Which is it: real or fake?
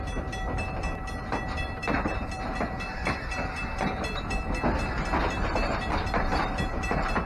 real